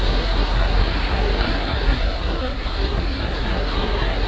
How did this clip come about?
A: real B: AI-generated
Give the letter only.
B